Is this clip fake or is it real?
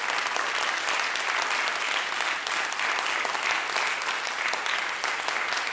real